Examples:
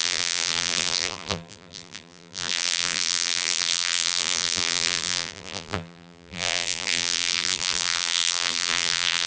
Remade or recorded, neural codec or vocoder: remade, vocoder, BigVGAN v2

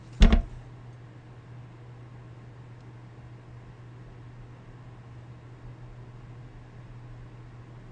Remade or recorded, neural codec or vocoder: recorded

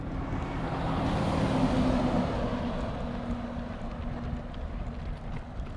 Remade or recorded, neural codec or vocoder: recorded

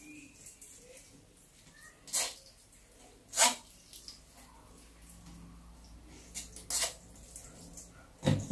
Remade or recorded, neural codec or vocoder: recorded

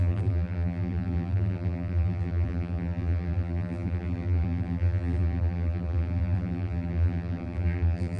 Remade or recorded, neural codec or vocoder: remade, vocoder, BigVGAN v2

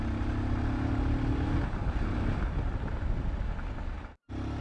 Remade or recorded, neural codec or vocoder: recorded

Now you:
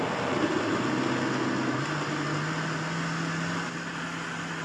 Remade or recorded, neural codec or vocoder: recorded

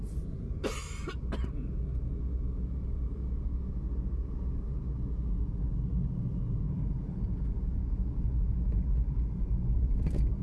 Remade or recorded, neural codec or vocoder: recorded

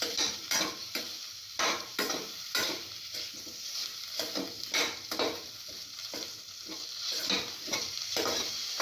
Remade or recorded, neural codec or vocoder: remade, vocoder, BigVGAN v2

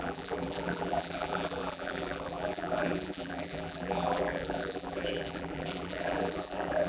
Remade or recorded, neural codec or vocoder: remade, vocoder, BigVGAN v2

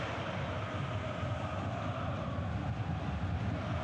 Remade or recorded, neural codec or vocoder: recorded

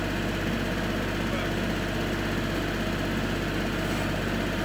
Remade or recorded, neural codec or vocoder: recorded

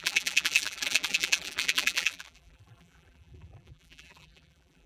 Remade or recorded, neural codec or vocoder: remade, vocoder, BigVGAN v2